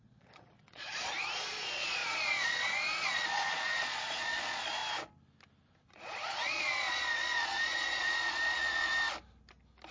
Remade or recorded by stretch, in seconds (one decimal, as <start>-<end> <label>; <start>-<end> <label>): 0.0-4.8 remade; 4.8-5.8 recorded; 5.8-8.9 remade; 8.9-9.9 recorded